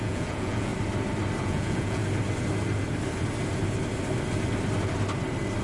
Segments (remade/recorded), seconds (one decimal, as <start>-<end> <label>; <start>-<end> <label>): 0.0-0.7 remade; 0.7-1.4 recorded; 1.4-2.0 remade; 2.0-5.6 recorded